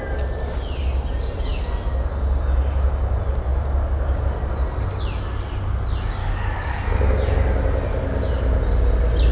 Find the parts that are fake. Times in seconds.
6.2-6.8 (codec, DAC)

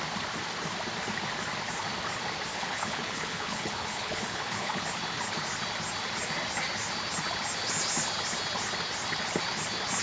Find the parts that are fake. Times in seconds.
2.5-4.8 (codec, HILCodec)

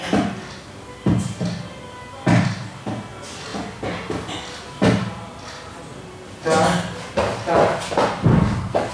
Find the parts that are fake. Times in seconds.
8.3-8.9 (codec, SNAC)

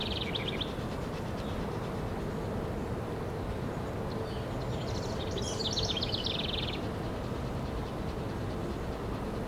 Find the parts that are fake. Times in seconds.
none

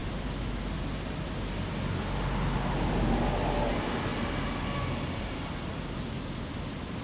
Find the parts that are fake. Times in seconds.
none

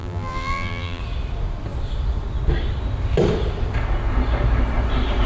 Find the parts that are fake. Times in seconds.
0.0-1.0 (vocoder, BigVGAN v2)